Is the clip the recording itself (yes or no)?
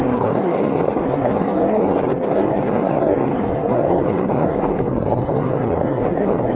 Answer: no